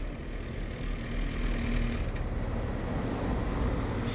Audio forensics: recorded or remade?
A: recorded